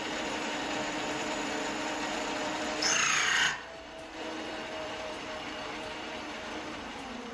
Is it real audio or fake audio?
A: fake